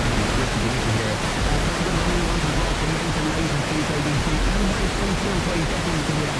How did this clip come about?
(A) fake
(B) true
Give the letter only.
B